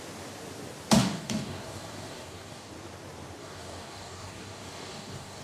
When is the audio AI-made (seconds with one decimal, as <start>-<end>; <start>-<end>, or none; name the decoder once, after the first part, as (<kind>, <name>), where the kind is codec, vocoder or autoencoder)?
1.0-2.7 (codec, DAC); 3.4-5.4